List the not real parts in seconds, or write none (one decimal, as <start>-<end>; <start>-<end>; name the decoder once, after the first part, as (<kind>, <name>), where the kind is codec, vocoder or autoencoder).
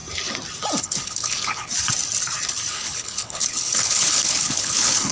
0.8-1.7 (codec, HILCodec); 2.7-5.1